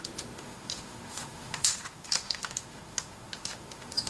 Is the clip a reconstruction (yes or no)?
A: yes